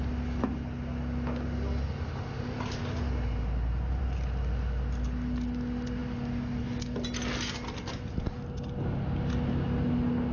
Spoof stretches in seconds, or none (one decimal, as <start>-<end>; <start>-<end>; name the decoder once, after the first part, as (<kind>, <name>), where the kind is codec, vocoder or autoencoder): none

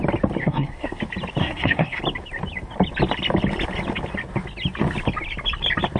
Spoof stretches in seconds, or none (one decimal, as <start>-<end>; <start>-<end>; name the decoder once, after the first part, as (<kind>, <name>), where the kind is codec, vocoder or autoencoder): 0.4-1.0 (codec, SNAC); 1.4-2.0

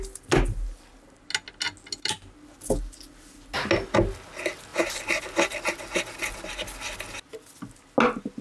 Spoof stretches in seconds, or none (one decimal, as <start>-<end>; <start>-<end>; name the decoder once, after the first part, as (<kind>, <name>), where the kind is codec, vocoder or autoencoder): none

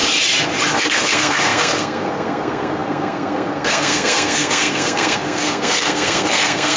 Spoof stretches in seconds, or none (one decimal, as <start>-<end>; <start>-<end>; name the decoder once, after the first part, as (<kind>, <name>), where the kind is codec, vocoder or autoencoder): 0.8-6.8 (codec, SNAC)

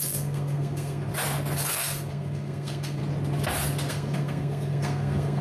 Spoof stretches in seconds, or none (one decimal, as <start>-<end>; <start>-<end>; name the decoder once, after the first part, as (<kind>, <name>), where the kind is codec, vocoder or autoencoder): 0.0-1.1 (codec, SNAC); 1.7-3.0; 3.9-5.4

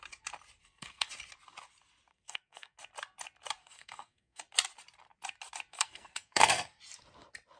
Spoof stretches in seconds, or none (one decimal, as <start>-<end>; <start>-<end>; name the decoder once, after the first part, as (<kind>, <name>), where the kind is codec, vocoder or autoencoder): 0.6-1.1 (codec, SNAC); 2.1-2.8; 3.6-4.4; 5.7-6.8